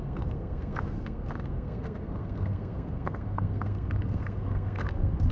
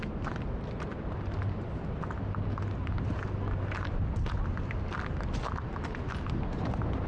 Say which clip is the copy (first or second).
first